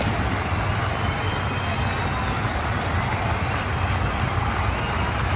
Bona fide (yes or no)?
yes